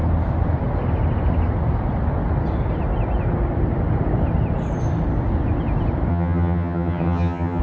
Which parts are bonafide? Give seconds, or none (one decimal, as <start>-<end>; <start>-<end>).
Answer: 0.0-6.1